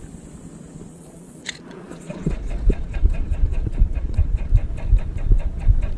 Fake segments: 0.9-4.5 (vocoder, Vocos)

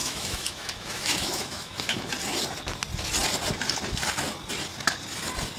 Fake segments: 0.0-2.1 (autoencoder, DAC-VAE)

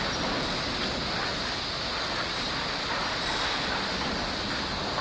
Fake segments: none

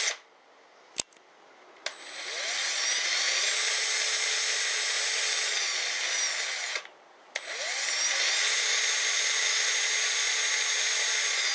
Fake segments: none

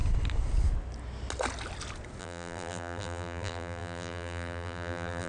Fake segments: 2.2-5.3 (vocoder, BigVGAN v2)

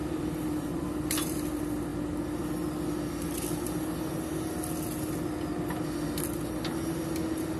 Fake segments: 0.0-1.5 (vocoder, BigVGAN v2)

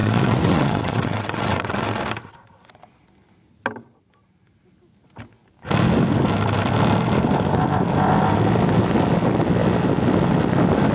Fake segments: 0.0-2.0 (vocoder, WaveNeXt)

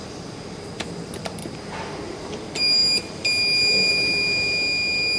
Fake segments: none